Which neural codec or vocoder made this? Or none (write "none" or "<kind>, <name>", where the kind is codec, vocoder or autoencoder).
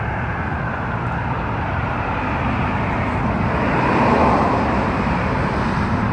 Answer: vocoder, BigVGAN v2